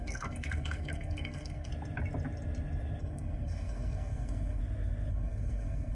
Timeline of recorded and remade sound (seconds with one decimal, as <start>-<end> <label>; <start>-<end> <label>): 0.0-1.7 remade; 1.7-3.0 recorded; 3.0-4.6 remade; 4.6-5.1 recorded; 5.1-6.0 remade